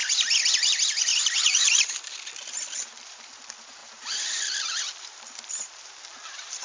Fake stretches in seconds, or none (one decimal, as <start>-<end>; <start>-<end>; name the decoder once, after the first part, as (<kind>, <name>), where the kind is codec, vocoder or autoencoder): 2.8-6.6 (vocoder, BigVGAN v2)